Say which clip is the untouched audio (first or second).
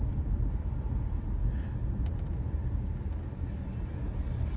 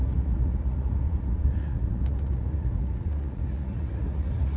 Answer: first